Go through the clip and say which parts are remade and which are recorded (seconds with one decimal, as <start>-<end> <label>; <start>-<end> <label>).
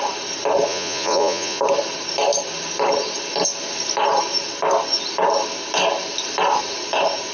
0.0-0.7 recorded; 0.7-1.6 remade; 1.6-7.3 recorded